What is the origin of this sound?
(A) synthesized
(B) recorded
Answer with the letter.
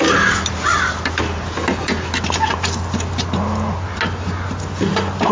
B